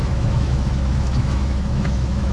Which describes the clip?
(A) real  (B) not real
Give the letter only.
B